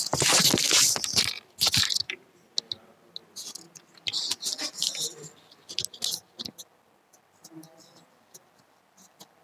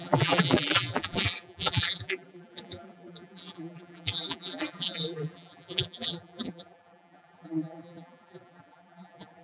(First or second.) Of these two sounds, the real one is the first